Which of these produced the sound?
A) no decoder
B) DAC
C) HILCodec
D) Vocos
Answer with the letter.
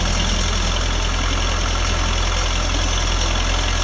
A